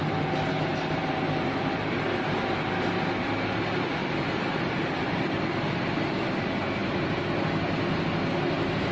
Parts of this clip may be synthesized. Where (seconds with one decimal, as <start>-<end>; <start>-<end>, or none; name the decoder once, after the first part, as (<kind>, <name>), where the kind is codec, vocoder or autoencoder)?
0.7-2.4 (vocoder, BigVGAN v2); 4.0-6.3